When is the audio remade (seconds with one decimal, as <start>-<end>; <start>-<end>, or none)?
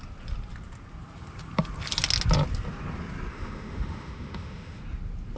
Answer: 3.3-4.8